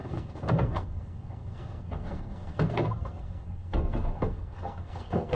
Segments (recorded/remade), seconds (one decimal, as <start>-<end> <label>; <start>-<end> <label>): 0.0-5.3 remade